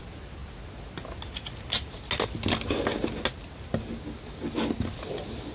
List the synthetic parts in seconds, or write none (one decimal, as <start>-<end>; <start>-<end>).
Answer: none